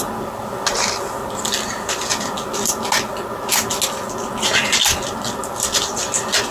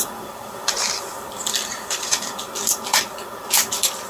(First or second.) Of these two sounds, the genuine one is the first